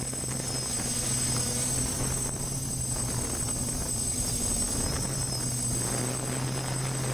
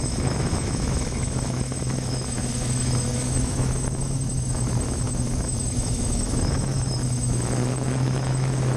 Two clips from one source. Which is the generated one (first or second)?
second